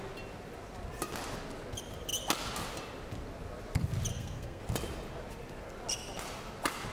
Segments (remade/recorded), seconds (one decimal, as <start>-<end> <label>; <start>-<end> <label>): 0.0-4.1 recorded; 4.1-4.6 remade; 4.6-6.9 recorded